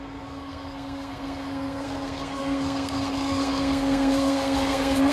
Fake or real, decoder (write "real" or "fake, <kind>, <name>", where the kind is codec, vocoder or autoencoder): fake, codec, SNAC